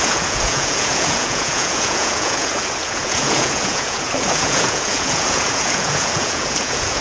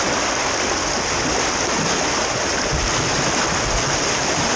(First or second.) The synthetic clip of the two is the first